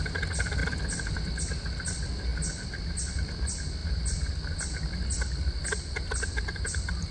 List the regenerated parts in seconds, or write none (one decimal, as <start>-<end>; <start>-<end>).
none